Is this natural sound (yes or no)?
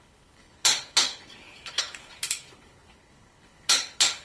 no